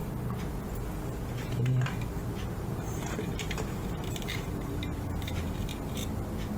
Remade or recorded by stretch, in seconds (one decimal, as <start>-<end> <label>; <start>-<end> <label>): 0.0-2.5 recorded; 2.5-6.0 remade; 6.0-6.6 recorded